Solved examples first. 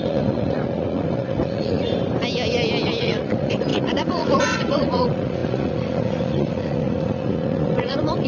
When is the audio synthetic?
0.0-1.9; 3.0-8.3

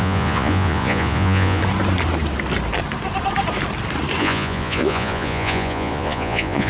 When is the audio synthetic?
0.0-1.6; 4.2-6.7

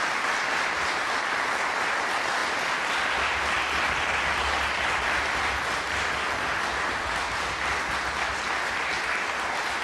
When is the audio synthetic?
none

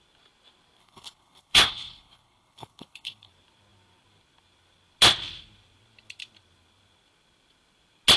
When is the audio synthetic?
0.8-3.3